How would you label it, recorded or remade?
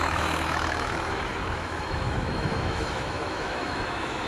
remade